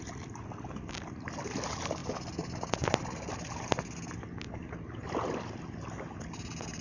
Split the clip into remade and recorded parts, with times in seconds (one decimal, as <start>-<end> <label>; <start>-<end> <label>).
0.0-6.8 recorded